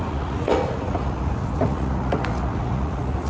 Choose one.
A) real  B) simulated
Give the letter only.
B